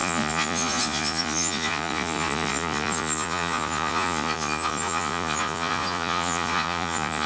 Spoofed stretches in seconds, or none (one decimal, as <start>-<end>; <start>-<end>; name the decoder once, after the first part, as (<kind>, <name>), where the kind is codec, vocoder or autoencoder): 0.0-7.3 (vocoder, Vocos)